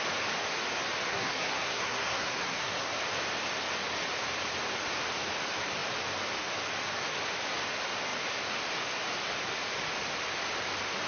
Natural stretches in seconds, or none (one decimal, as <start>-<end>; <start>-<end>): 0.0-1.1; 3.0-11.1